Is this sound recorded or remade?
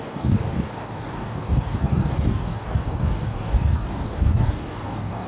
remade